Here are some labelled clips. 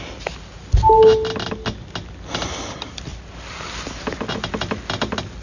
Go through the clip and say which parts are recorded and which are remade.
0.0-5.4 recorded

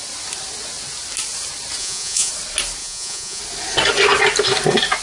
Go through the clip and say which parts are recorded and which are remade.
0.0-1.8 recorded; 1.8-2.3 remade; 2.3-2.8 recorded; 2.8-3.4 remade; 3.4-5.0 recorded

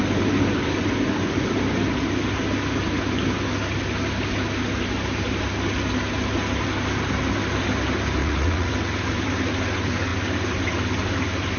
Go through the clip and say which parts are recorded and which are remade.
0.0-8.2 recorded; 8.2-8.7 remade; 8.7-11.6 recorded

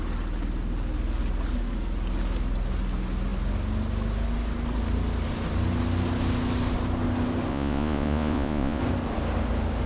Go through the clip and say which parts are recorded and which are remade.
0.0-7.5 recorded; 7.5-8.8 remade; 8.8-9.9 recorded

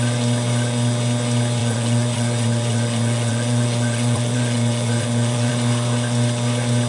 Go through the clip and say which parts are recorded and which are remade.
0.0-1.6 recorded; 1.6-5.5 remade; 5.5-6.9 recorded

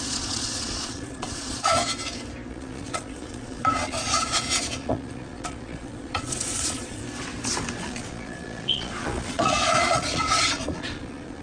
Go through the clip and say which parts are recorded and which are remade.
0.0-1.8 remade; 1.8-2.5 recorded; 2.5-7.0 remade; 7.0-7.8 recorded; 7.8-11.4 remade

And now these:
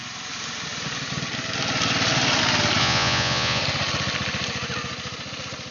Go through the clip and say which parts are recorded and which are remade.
0.0-2.8 recorded; 2.8-3.6 remade; 3.6-5.7 recorded